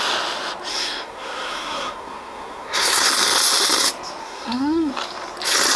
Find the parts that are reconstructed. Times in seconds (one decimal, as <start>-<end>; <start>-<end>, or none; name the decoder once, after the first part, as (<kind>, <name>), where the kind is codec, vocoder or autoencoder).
0.7-3.1 (codec, SNAC); 4.2-4.9